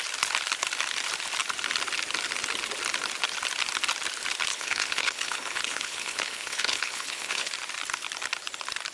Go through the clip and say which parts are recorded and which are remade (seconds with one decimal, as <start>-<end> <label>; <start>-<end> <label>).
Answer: 0.0-4.5 recorded; 4.5-7.5 remade; 7.5-8.9 recorded